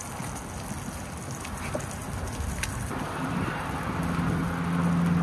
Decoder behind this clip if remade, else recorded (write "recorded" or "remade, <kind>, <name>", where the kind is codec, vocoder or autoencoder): recorded